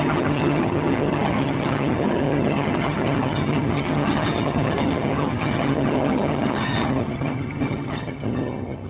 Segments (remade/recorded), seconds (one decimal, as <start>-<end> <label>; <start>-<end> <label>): 0.0-8.9 remade